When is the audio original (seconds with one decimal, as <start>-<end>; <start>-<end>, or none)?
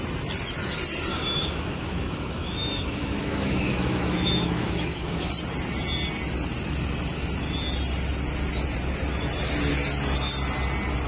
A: 0.0-1.1; 5.3-11.1